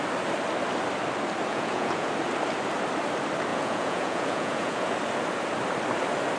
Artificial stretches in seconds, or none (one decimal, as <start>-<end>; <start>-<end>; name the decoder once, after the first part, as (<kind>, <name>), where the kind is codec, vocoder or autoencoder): 1.5-2.1 (vocoder, Vocos); 3.5-4.9